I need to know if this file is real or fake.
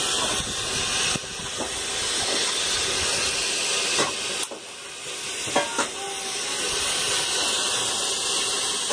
real